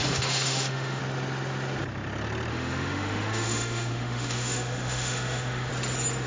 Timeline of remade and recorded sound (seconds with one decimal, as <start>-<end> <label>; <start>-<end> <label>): 0.0-1.0 remade; 1.0-2.5 recorded; 2.5-5.7 remade; 5.7-6.3 recorded